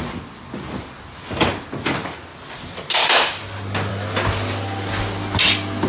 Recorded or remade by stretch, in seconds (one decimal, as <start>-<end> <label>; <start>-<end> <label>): 0.0-5.9 recorded

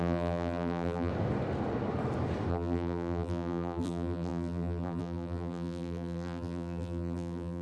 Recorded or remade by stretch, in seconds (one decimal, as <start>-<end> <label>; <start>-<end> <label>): 0.0-1.1 remade; 1.1-2.5 recorded; 2.5-7.6 remade

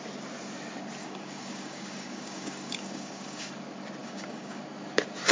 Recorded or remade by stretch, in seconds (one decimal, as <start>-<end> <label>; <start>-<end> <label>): 0.0-1.0 recorded; 1.0-3.5 remade; 3.5-4.0 recorded; 4.0-4.6 remade; 4.6-5.3 recorded

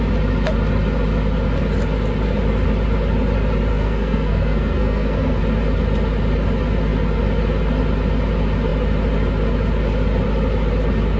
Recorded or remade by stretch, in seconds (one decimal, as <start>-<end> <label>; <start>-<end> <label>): 0.0-3.7 recorded; 3.7-5.4 remade; 5.4-11.2 recorded

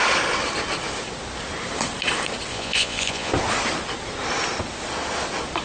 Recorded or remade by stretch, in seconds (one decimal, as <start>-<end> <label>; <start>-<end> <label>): 0.0-2.5 recorded; 2.5-3.3 remade; 3.3-5.6 recorded

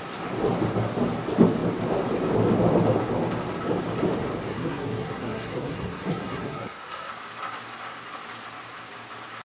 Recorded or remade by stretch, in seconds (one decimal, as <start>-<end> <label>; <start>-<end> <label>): 0.0-4.5 recorded; 4.5-7.1 remade; 7.1-9.5 recorded

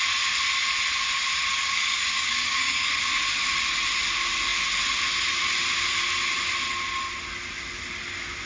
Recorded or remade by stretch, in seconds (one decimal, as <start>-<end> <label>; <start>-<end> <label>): 0.0-1.5 recorded; 1.5-3.0 remade; 3.0-8.5 recorded

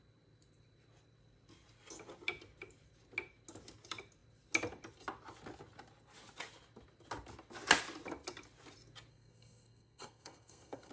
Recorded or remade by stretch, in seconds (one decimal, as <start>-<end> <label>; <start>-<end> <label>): 0.0-9.1 recorded; 9.1-10.9 remade